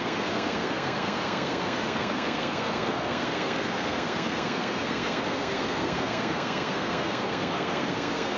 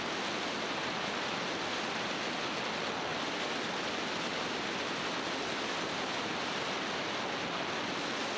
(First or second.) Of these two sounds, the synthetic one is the first